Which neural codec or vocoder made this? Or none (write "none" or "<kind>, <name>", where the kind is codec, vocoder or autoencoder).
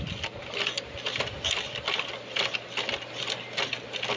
none